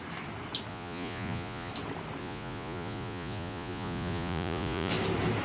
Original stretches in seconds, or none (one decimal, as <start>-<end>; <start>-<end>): 0.0-0.7; 1.7-2.2; 4.9-5.4